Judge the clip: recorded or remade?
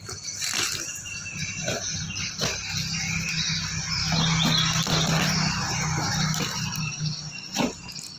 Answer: recorded